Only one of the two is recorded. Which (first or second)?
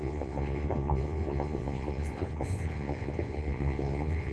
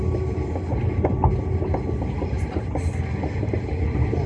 second